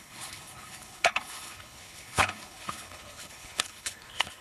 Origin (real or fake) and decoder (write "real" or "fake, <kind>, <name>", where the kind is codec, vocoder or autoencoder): fake, codec, HILCodec